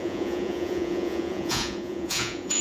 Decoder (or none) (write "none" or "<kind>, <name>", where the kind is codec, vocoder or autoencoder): vocoder, Vocos